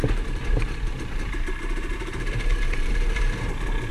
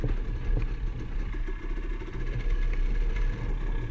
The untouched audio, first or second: second